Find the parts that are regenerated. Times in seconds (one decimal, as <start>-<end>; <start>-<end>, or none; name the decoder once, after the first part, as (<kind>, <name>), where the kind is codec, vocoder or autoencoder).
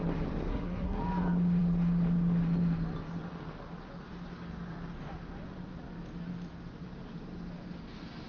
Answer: 0.5-1.0 (codec, SNAC)